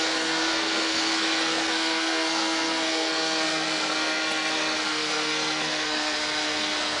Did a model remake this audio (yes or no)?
yes